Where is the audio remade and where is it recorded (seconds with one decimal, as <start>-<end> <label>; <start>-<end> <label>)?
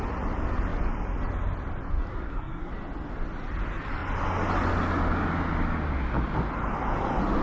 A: 0.0-2.1 recorded; 2.1-2.7 remade; 2.7-7.4 recorded